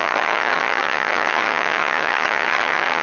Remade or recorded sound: remade